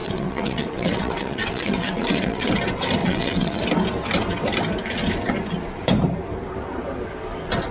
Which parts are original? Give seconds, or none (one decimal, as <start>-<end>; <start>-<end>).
2.5-3.0; 3.6-7.7